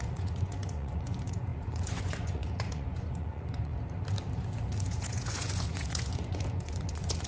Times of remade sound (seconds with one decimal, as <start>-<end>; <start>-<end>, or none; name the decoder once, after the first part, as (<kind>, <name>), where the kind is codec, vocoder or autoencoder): 0.0-3.7 (vocoder, Vocos); 4.8-7.3